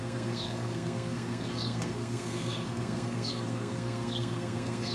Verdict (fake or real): fake